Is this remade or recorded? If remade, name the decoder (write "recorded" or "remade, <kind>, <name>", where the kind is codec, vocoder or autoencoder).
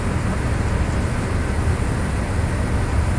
recorded